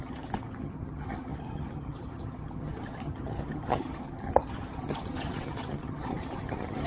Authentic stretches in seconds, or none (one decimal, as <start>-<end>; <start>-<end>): none